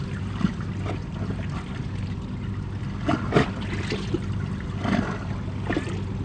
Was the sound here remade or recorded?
recorded